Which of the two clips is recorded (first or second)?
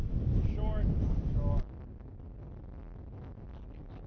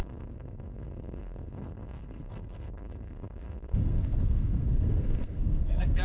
first